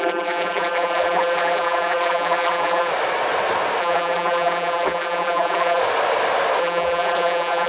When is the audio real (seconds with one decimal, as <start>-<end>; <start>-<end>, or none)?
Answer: 2.9-3.8; 5.8-6.6